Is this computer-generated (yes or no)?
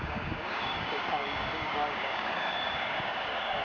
yes